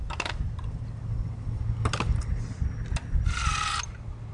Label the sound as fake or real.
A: real